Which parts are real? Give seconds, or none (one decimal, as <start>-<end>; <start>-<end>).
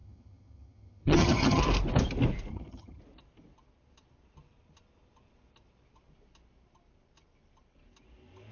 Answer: 1.6-2.5; 3.0-8.5